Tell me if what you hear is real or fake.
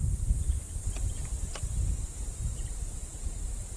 fake